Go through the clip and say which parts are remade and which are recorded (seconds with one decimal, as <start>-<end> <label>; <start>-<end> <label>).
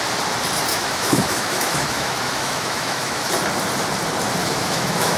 0.0-0.7 recorded; 0.7-3.3 remade; 3.3-4.4 recorded; 4.4-5.2 remade